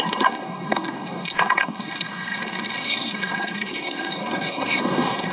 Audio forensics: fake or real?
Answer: fake